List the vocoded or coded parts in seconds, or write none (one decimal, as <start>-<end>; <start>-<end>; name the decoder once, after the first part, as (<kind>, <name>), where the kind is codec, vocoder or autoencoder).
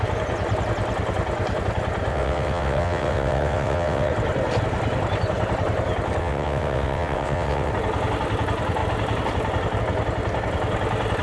2.1-4.1 (vocoder, WaveNeXt); 6.2-7.7